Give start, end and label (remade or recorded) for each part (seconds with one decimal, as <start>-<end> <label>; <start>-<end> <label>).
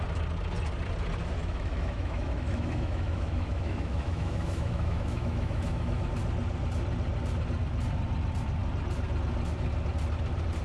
0.0-1.2 recorded; 1.2-6.1 remade; 6.1-10.6 recorded